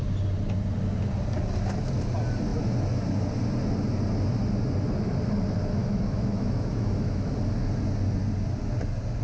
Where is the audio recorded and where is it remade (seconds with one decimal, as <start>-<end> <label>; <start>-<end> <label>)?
0.0-5.8 recorded; 5.8-7.3 remade; 7.3-9.2 recorded